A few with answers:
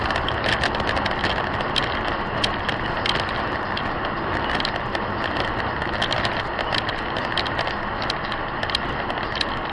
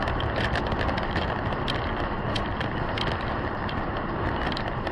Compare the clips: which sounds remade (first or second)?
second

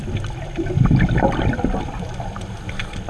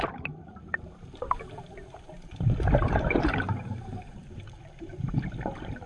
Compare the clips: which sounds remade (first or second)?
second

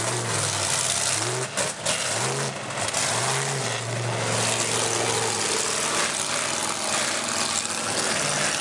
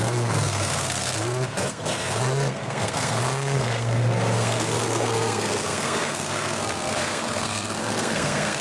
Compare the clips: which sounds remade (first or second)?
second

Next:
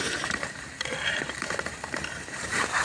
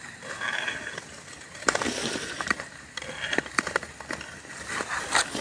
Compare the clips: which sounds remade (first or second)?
first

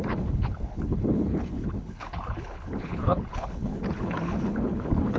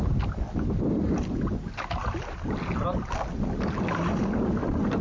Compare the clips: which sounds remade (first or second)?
first